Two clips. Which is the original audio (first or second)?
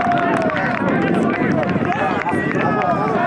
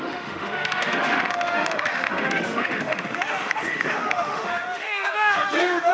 first